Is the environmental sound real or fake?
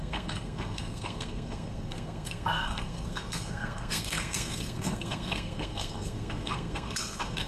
fake